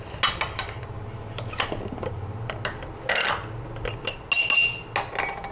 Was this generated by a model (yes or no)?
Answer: no